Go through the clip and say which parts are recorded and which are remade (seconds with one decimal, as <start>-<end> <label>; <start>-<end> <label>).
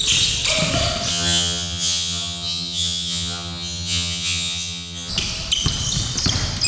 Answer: 0.0-1.1 recorded; 1.1-5.1 remade; 5.1-6.7 recorded